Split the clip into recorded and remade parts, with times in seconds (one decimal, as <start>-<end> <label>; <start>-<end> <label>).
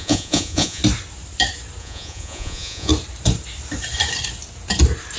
0.0-0.8 remade; 0.8-1.8 recorded; 1.8-2.9 remade; 2.9-5.2 recorded